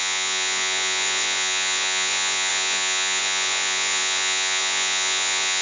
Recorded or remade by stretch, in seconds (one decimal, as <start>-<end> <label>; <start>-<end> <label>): 0.0-5.6 remade